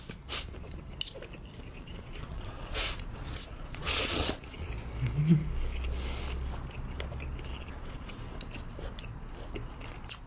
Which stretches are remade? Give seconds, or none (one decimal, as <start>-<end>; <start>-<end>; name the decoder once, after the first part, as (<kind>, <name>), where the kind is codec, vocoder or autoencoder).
1.7-4.7 (vocoder, Vocos); 7.5-8.1